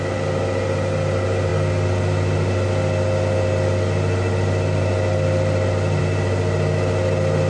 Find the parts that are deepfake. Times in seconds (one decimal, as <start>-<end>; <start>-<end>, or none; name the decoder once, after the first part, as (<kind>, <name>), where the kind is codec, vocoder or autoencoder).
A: none